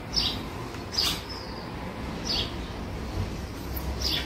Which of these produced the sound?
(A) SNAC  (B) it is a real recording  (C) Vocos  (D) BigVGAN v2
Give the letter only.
B